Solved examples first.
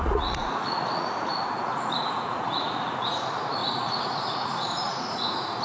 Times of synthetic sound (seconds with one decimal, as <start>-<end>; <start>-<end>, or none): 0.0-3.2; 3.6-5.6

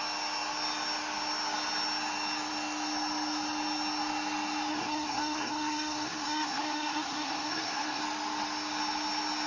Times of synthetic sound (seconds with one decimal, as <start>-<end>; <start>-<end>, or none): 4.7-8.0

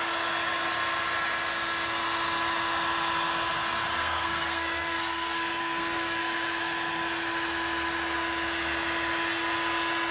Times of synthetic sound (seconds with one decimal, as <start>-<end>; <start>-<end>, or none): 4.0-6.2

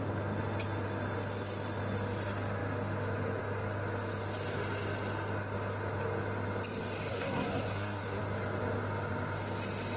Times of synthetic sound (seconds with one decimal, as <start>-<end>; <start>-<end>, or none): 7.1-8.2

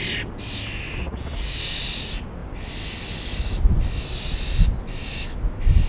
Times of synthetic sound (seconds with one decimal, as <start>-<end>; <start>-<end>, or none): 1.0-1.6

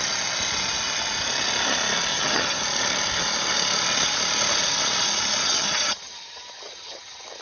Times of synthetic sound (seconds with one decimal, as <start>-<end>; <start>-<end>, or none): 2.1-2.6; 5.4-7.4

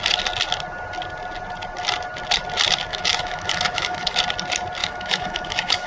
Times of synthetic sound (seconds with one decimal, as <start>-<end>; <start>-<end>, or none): 2.9-4.2; 4.8-5.9